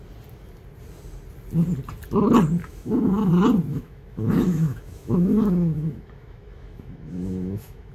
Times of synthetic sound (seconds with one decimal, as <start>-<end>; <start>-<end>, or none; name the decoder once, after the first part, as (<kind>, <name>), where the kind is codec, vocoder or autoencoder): 2.6-3.3 (autoencoder, DAC-VAE); 3.7-7.9

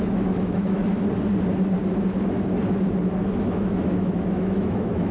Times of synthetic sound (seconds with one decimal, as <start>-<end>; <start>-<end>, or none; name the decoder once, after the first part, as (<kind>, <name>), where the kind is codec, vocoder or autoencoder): 0.0-0.8 (autoencoder, DAC-VAE); 3.4-5.1

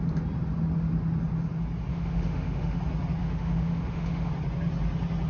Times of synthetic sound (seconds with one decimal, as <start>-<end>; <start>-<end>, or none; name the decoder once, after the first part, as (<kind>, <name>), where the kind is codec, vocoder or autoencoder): 1.9-2.8 (autoencoder, DAC-VAE); 3.2-4.3

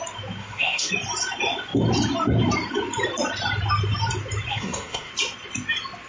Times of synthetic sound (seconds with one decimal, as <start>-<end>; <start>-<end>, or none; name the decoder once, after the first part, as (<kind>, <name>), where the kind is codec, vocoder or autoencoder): 0.4-0.9 (autoencoder, DAC-VAE); 4.5-5.1